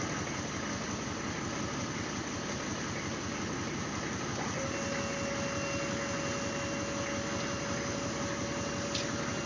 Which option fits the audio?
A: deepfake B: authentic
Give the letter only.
B